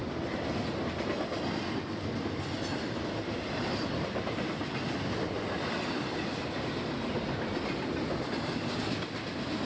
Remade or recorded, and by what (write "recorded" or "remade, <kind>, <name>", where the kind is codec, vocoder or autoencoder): recorded